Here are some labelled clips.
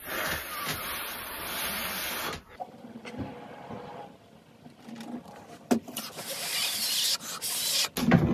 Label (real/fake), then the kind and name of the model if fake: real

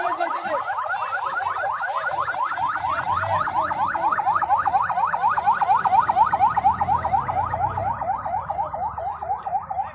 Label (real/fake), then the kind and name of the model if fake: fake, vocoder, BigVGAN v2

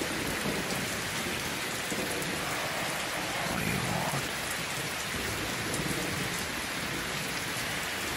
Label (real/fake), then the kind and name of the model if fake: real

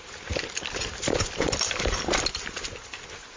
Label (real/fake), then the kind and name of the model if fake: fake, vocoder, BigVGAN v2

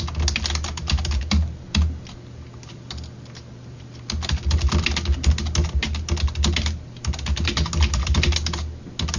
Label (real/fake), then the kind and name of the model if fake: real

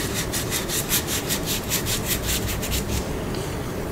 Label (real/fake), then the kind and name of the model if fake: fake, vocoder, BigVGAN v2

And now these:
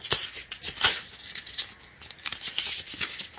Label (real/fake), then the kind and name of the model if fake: real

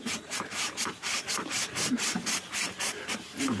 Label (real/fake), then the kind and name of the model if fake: fake, vocoder, BigVGAN v2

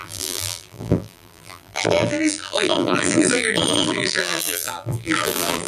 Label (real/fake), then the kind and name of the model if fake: fake, vocoder, BigVGAN v2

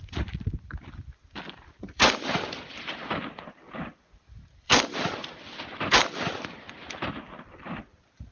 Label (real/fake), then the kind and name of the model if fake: fake, vocoder, BigVGAN v2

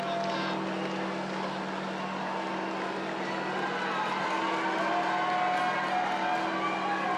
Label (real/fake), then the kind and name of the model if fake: real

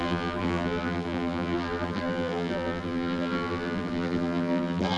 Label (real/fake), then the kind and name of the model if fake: fake, vocoder, BigVGAN v2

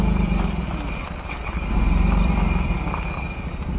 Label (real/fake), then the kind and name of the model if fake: fake, vocoder, BigVGAN v2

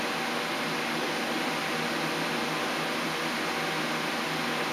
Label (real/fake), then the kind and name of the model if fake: real